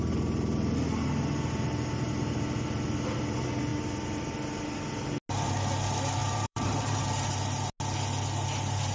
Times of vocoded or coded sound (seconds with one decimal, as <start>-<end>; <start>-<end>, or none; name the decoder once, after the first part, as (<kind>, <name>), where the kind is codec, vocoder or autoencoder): 6.2-7.0 (vocoder, BigVGAN v2)